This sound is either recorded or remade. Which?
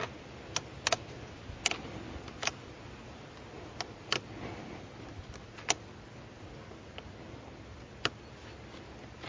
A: recorded